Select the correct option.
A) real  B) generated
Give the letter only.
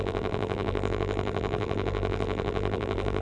B